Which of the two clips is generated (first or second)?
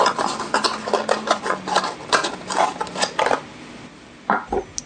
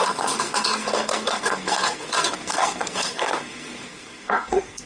second